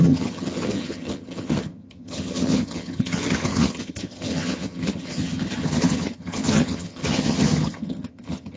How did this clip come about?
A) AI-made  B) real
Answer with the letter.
A